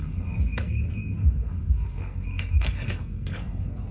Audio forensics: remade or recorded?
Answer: remade